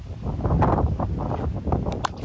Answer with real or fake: real